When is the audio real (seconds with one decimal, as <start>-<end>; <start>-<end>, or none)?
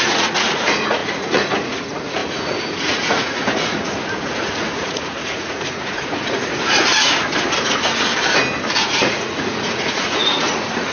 6.9-7.6; 8.1-8.8